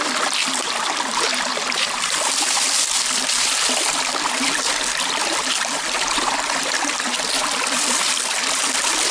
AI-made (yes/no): yes